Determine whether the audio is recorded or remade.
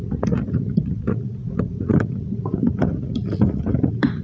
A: remade